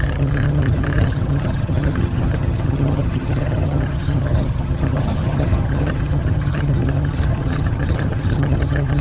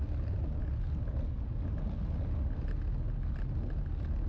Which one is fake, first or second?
first